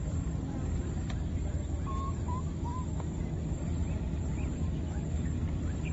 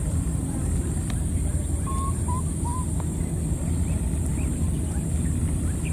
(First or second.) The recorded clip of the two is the first